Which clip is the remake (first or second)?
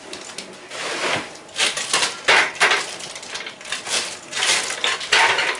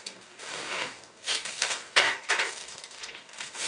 second